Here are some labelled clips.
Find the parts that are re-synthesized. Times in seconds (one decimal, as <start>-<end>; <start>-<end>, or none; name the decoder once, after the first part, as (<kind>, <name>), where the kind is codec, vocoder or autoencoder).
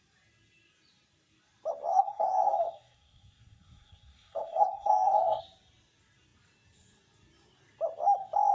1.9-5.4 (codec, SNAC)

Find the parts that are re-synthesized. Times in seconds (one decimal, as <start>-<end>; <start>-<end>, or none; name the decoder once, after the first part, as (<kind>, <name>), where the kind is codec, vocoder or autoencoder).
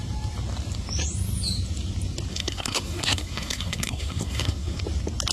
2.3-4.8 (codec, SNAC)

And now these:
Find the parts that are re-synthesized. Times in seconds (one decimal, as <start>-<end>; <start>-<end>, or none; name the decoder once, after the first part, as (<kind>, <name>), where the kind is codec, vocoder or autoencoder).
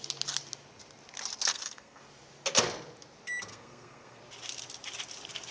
1.5-2.0 (codec, SNAC); 3.5-4.2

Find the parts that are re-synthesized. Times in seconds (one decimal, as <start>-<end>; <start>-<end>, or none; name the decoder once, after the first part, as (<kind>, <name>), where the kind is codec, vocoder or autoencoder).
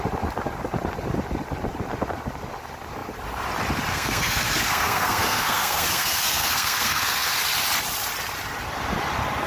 3.9-7.4 (codec, SNAC)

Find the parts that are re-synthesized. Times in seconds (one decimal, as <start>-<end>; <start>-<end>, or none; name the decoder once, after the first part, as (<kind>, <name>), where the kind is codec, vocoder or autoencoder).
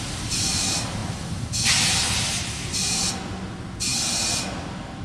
none